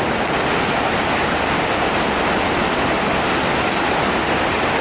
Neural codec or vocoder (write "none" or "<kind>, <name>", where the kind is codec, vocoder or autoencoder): none